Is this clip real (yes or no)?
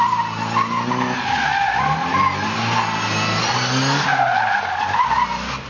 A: yes